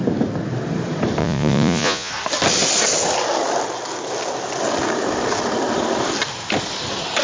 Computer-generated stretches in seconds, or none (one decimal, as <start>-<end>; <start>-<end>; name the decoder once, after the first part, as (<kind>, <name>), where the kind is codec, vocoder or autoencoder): 1.2-2.1 (vocoder, Vocos)